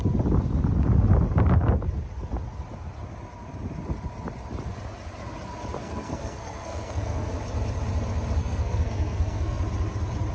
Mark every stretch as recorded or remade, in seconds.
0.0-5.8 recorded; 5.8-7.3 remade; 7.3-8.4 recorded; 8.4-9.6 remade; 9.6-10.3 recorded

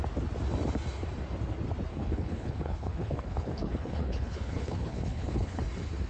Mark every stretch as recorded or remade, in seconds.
0.0-1.9 recorded; 1.9-5.6 remade; 5.6-6.1 recorded

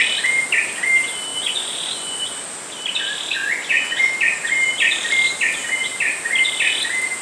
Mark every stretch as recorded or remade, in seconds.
0.0-1.3 recorded; 1.3-2.4 remade; 2.4-3.4 recorded; 3.4-4.1 remade; 4.1-7.2 recorded

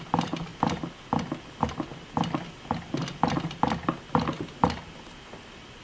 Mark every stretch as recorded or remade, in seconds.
0.0-5.8 recorded